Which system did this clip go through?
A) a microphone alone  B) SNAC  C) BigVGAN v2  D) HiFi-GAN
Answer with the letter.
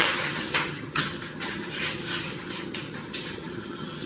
D